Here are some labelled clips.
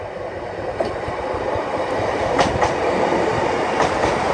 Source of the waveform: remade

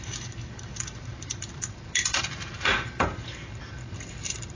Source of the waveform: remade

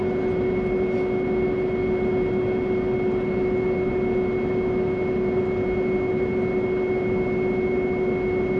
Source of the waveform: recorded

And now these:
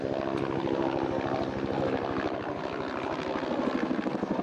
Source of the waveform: recorded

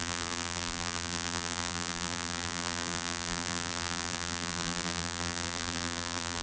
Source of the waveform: remade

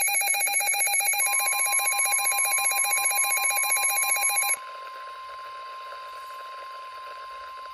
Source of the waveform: remade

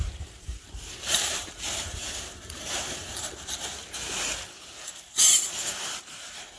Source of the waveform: remade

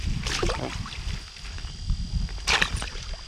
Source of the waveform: recorded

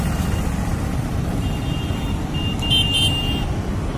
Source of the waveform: recorded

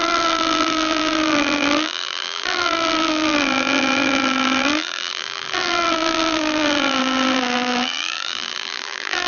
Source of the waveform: remade